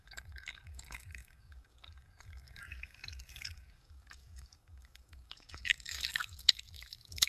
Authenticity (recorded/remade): remade